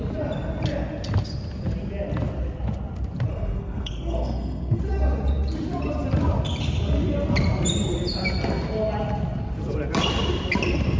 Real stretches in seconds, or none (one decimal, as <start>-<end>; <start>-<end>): 0.0-3.3; 4.8-11.0